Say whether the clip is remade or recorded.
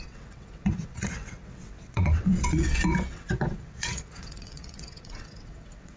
remade